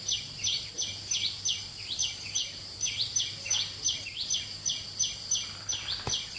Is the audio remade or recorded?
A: recorded